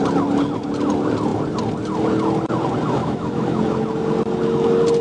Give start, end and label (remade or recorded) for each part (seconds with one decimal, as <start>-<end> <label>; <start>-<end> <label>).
0.0-3.0 recorded; 3.0-3.6 remade; 3.6-5.0 recorded